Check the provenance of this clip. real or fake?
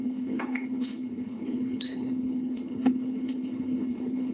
fake